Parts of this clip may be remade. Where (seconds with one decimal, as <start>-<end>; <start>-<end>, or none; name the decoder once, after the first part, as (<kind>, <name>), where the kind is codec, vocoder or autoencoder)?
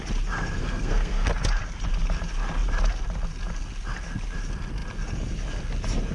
0.6-1.3 (codec, SNAC)